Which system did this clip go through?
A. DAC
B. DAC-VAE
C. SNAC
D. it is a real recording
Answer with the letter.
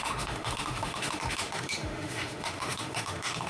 B